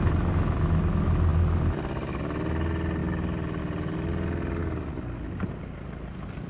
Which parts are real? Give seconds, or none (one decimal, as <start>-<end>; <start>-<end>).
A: 0.0-6.5